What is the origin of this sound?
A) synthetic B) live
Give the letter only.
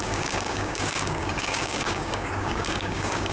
A